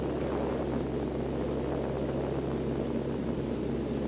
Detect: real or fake real